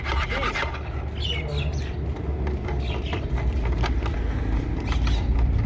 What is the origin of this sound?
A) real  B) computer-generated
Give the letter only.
A